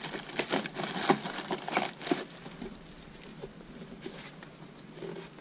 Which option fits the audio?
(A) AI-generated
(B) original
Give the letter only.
B